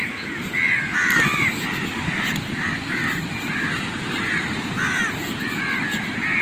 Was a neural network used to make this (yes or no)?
no